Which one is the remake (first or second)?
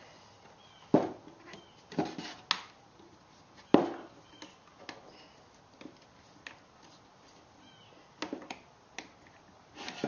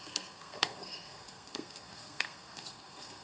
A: second